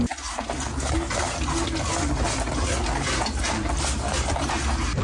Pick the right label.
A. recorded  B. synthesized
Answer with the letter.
A